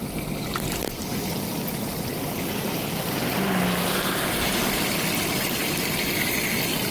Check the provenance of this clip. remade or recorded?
recorded